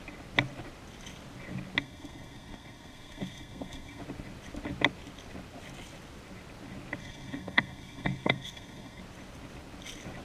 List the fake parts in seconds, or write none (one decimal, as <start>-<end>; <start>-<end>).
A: 1.8-4.0; 7.0-9.0

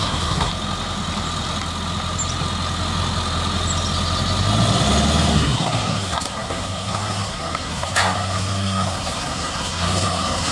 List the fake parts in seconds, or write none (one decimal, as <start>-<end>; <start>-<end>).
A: 0.0-0.5; 5.3-10.5

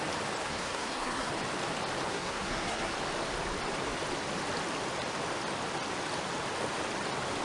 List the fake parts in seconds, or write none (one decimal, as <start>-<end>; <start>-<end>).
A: 0.4-1.3; 2.1-2.9

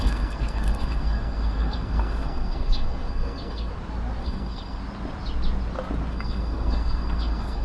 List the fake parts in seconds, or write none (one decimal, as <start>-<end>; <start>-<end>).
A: 0.0-3.7; 4.2-4.8; 6.1-7.6

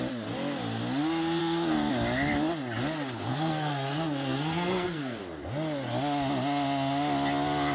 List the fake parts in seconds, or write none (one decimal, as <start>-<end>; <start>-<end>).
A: 1.4-1.9; 3.3-5.2

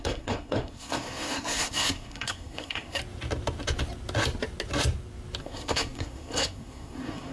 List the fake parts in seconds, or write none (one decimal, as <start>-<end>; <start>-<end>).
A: 0.0-3.0; 5.4-7.3

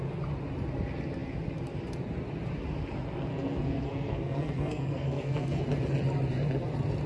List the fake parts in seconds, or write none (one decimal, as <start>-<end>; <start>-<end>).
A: 3.3-5.6